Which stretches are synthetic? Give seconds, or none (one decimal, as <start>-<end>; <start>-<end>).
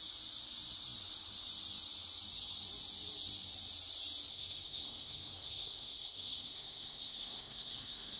4.3-8.2